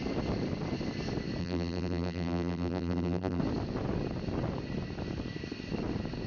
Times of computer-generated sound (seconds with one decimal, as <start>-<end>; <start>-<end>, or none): 1.4-3.4